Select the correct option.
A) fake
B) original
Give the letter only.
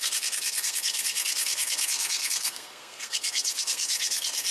A